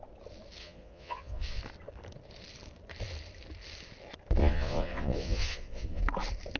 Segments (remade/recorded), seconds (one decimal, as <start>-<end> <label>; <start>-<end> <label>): 0.0-0.6 recorded; 0.6-1.6 remade; 1.6-4.4 recorded; 4.4-6.0 remade; 6.0-6.6 recorded